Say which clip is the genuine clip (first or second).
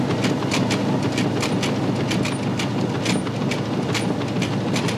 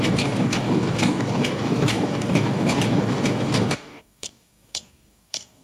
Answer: first